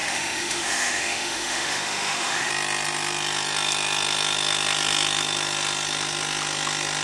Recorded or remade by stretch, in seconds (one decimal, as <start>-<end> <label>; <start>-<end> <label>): 0.0-2.5 remade; 2.5-7.0 recorded